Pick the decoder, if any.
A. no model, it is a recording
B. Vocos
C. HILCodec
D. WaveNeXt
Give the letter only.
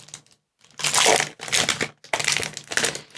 A